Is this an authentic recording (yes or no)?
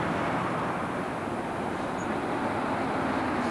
yes